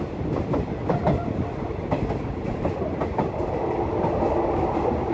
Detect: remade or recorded recorded